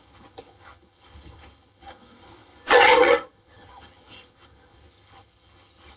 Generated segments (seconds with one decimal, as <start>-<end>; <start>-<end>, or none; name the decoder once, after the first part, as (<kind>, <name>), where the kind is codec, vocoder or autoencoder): 0.0-6.0 (vocoder, HiFi-GAN)